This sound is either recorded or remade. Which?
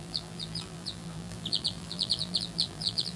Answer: remade